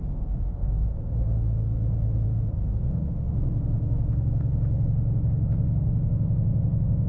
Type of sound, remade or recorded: remade